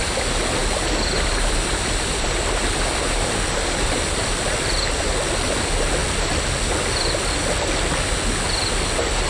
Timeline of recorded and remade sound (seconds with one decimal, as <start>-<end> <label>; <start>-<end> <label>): 0.0-0.6 recorded; 0.6-4.5 remade; 4.5-9.3 recorded